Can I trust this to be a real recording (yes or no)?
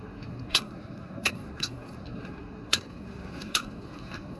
no